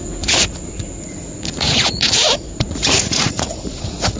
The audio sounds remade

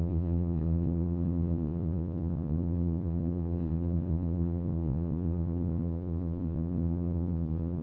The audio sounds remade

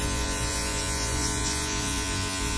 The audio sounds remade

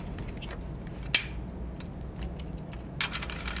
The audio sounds recorded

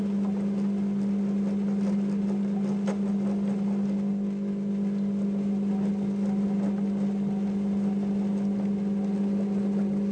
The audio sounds recorded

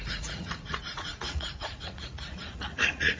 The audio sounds remade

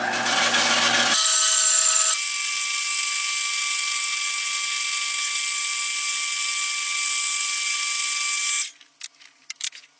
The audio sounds recorded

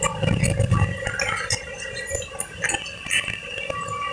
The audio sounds recorded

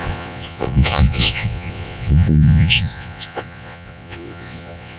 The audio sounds remade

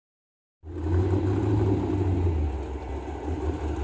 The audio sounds recorded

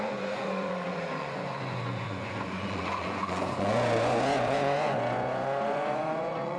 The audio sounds remade